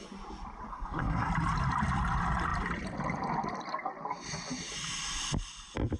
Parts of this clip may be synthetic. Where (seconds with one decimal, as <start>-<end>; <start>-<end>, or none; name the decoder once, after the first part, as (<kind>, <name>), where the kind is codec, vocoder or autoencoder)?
0.7-1.3 (codec, SNAC)